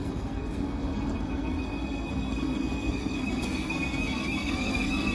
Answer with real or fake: fake